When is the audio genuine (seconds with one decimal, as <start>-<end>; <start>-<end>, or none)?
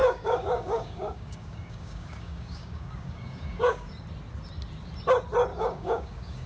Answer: 3.9-5.5